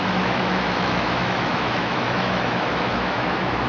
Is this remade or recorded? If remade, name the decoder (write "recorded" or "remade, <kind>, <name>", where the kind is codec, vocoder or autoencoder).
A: remade, autoencoder, DAC-VAE